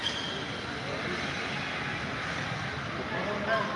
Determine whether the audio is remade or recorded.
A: recorded